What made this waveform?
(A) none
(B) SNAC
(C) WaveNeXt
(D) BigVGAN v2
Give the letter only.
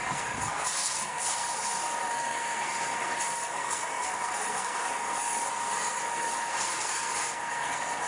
B